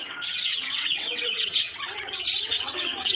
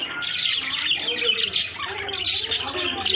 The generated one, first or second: first